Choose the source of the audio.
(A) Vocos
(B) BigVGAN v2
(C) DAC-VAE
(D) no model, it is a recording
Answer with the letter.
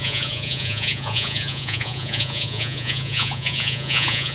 A